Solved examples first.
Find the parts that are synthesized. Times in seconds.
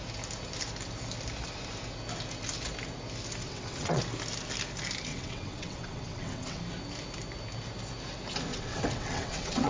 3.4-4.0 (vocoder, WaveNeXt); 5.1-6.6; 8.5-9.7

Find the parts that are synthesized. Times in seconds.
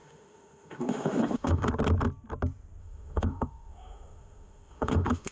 0.0-1.7 (autoencoder, DAC-VAE); 2.8-5.3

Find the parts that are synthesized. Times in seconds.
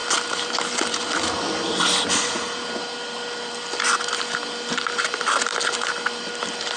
none